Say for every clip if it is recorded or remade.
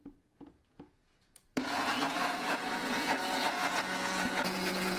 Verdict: remade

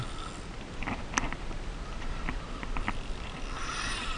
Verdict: recorded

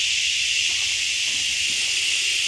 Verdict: recorded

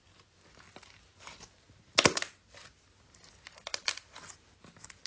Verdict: recorded